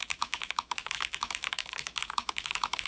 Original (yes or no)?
no